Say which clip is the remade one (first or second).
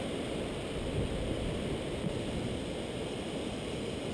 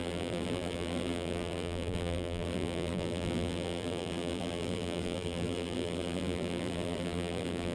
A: second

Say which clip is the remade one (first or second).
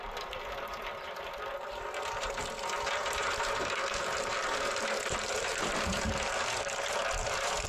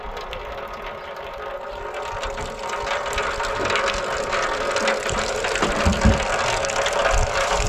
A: first